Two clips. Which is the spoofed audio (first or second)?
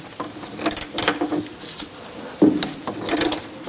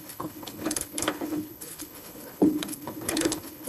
second